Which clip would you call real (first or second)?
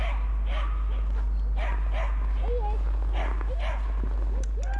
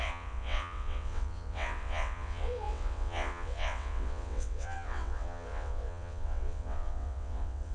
first